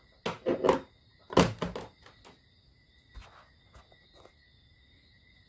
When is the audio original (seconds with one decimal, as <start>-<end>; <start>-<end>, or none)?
0.0-5.5